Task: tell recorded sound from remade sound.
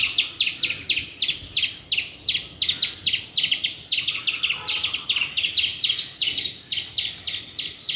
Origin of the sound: recorded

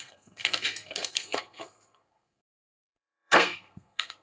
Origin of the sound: remade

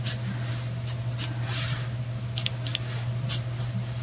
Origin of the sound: recorded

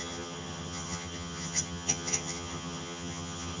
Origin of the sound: remade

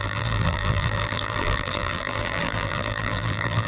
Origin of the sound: remade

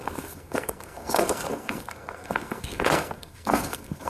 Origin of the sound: remade